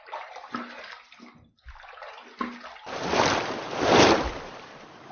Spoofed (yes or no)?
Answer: no